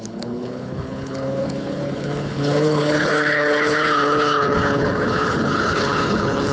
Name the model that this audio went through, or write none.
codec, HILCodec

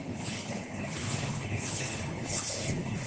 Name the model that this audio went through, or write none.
codec, HILCodec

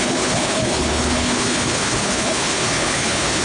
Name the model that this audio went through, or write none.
codec, HILCodec